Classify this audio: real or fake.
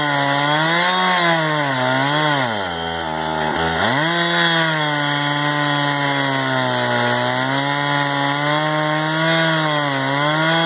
real